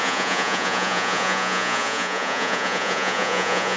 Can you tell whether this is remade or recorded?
remade